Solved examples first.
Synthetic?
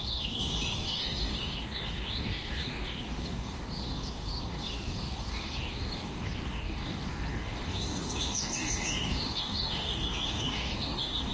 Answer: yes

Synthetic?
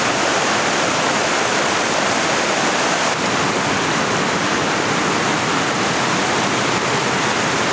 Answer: no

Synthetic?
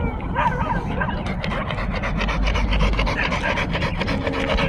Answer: no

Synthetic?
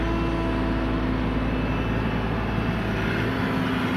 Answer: no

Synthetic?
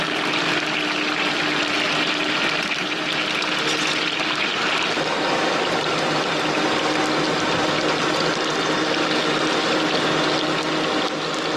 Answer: no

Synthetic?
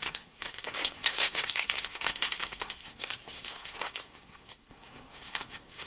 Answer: yes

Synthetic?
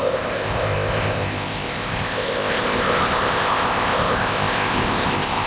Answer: yes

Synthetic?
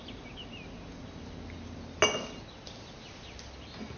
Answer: no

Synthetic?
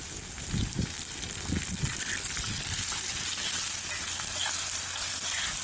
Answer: no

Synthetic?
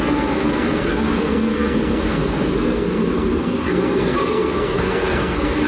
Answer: yes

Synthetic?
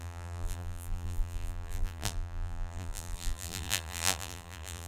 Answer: yes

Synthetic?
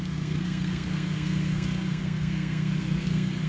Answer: yes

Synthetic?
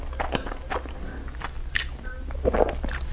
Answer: no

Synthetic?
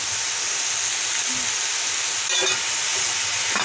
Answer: no